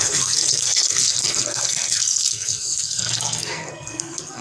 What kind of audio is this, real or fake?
fake